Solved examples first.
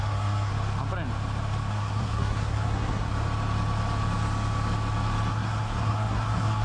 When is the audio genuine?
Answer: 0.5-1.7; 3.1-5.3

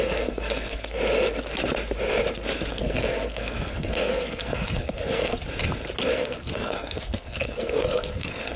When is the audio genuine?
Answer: 1.0-2.7; 5.4-6.1

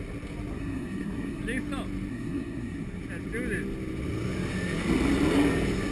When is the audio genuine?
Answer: 0.0-0.5; 1.4-2.1; 3.0-5.9